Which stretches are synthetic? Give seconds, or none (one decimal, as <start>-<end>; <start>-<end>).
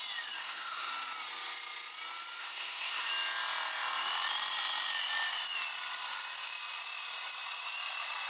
0.4-0.9; 2.4-3.1